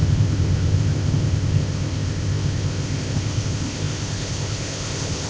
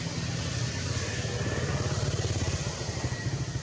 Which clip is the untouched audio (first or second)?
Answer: second